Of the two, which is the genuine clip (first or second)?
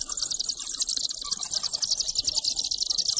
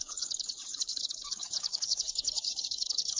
first